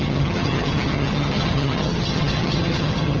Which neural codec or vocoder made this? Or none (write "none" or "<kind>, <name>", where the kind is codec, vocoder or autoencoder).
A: vocoder, HiFi-GAN